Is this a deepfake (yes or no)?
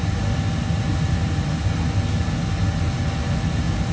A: no